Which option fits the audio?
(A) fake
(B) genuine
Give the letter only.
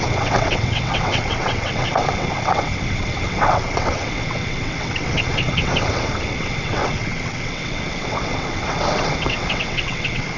A